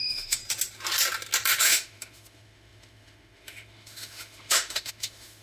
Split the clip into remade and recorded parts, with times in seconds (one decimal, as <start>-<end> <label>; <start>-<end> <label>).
0.0-0.4 remade; 0.4-1.6 recorded; 1.6-5.4 remade